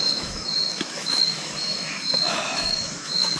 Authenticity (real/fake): fake